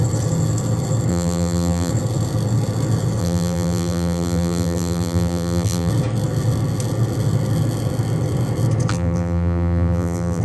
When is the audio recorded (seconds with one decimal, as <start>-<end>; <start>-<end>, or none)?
0.0-1.1; 1.9-3.2; 5.9-8.9